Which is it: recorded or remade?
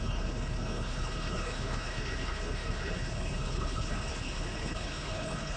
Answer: remade